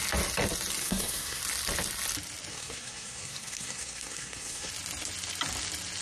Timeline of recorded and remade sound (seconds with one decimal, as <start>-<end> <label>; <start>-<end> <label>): 0.0-0.8 recorded; 0.8-1.4 remade; 1.4-2.5 recorded; 2.5-4.7 remade; 4.7-6.0 recorded

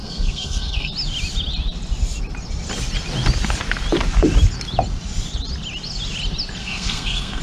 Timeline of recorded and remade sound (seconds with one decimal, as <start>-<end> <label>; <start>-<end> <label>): 0.0-0.9 remade; 0.9-6.6 recorded; 6.6-7.4 remade

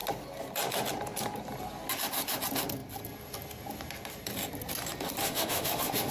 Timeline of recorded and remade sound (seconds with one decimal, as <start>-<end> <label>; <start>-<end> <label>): 0.0-5.2 recorded; 5.2-6.1 remade

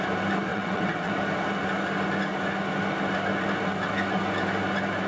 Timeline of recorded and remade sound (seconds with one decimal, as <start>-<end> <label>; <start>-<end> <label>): 0.0-0.5 recorded; 0.5-1.1 remade; 1.1-5.1 recorded

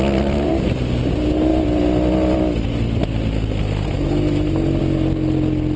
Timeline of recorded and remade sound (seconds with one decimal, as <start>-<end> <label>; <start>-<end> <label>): 0.0-5.8 recorded

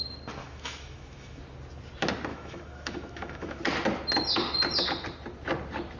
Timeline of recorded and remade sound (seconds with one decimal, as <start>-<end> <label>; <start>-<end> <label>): 0.0-0.4 recorded; 0.4-1.4 remade; 1.4-2.3 recorded; 2.3-3.6 remade; 3.6-6.0 recorded

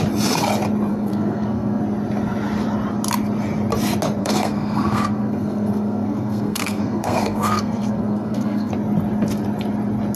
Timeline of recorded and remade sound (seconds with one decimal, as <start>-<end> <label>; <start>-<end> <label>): 0.0-0.9 recorded; 0.9-1.8 remade; 1.8-4.2 recorded; 4.2-8.7 remade; 8.7-10.2 recorded

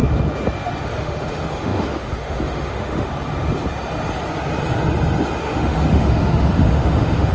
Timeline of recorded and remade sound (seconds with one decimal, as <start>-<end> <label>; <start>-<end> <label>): 0.0-0.8 recorded; 0.8-3.1 remade; 3.1-5.4 recorded; 5.4-7.3 remade